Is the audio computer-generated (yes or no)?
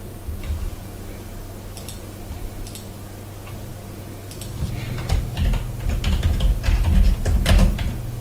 no